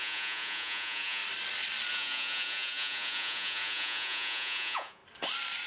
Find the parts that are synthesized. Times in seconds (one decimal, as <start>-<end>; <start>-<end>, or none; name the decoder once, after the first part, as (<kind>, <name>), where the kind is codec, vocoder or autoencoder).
0.0-1.2 (vocoder, Vocos); 1.9-5.0